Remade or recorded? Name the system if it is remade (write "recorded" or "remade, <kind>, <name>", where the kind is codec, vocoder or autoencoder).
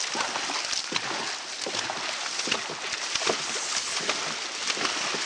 recorded